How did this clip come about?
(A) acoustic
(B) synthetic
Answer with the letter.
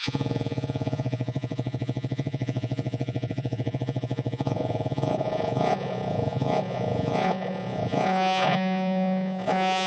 B